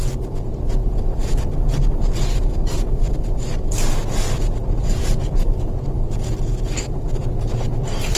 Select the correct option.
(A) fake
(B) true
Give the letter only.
A